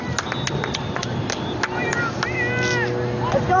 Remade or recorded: recorded